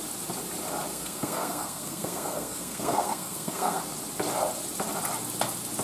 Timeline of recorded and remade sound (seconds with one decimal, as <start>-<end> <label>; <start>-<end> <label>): 0.0-0.9 recorded; 0.9-3.8 remade; 3.8-5.8 recorded